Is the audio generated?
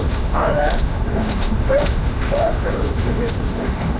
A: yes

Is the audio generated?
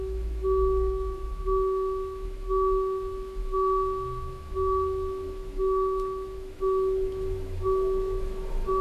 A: yes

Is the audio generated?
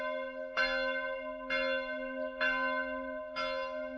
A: no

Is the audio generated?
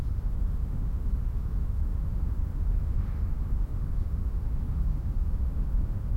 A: yes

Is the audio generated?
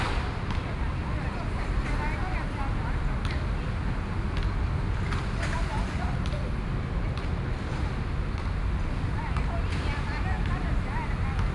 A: no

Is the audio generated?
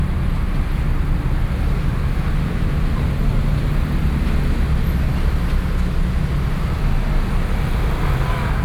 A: no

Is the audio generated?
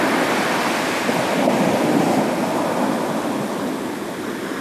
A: no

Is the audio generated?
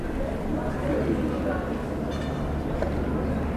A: no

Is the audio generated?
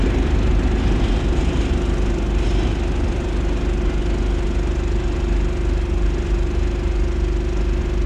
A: no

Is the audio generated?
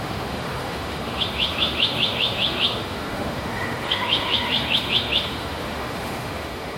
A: yes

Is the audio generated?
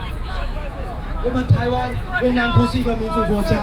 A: yes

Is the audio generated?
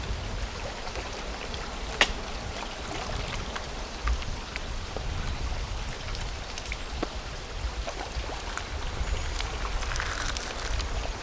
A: no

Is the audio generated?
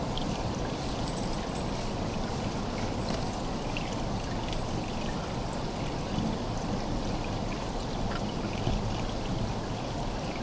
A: no